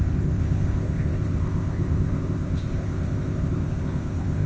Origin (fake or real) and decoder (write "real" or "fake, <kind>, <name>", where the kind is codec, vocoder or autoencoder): fake, codec, ZipCodec